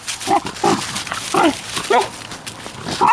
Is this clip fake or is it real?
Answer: real